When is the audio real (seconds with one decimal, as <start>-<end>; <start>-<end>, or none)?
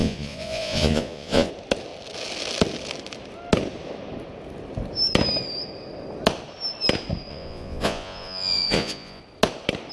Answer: 1.5-7.3; 9.2-9.9